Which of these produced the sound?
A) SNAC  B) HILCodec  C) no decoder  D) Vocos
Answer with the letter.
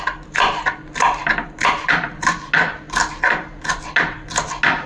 C